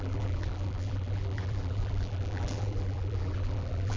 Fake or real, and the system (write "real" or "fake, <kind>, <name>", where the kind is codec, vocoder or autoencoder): fake, vocoder, BigVGAN v2